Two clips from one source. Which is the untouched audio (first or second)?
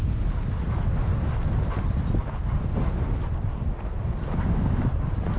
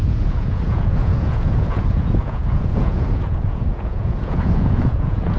first